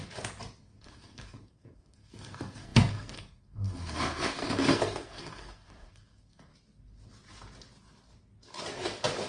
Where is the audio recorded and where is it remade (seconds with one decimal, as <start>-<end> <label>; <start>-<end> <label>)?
0.0-0.8 recorded; 0.8-6.5 remade; 6.5-9.3 recorded